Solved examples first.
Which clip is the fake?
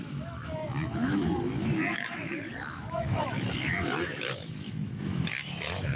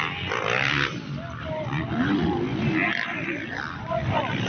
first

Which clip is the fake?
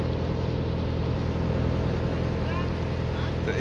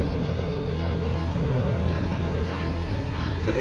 second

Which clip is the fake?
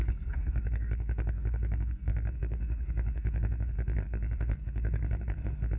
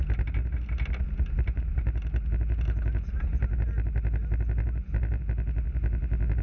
first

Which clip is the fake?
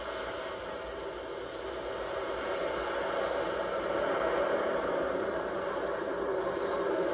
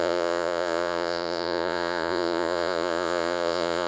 second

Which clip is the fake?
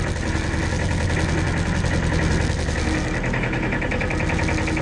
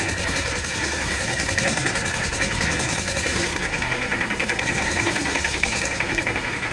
second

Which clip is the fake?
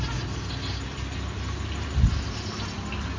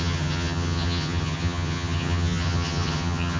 second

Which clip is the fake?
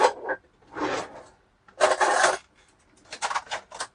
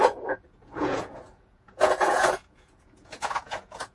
second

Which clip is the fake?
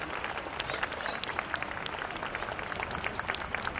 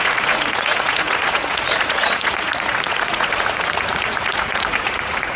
second